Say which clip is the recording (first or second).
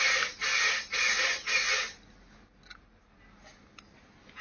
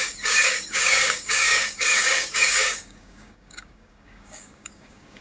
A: first